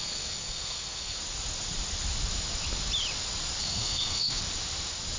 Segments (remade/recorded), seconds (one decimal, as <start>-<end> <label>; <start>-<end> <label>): 0.0-1.2 remade; 1.2-3.6 recorded; 3.6-4.4 remade; 4.4-5.2 recorded